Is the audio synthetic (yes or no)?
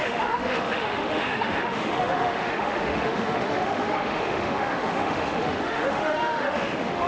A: yes